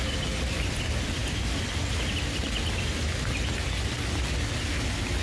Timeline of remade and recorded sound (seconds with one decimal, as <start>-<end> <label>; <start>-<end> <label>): 0.0-5.2 recorded